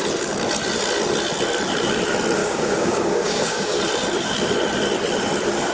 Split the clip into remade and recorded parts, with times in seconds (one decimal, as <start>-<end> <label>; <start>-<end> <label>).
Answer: 0.0-2.4 recorded; 2.4-3.8 remade; 3.8-5.7 recorded